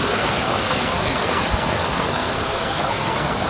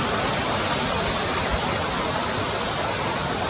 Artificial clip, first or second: first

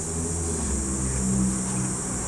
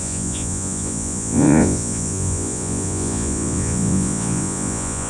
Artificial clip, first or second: second